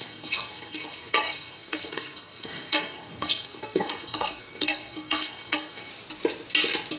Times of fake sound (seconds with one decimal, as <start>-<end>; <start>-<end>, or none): 0.0-5.9